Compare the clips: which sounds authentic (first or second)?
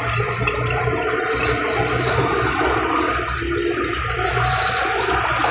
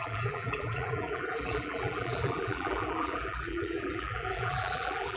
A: first